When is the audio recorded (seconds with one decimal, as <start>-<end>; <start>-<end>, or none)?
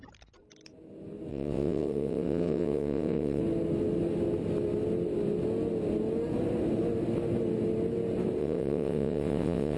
0.0-1.3; 3.4-8.4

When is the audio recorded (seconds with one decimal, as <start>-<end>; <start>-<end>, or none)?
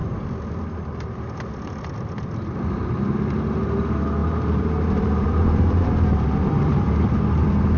0.0-4.2; 7.0-7.8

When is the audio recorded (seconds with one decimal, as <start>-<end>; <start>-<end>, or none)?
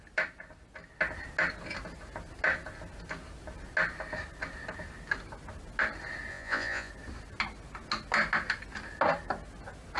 0.0-6.3; 6.9-10.0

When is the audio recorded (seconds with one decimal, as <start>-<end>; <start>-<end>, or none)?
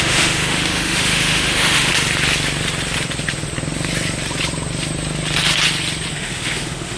1.9-6.1